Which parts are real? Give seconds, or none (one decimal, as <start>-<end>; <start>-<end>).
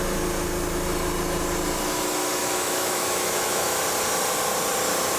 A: 0.0-2.4; 3.8-5.2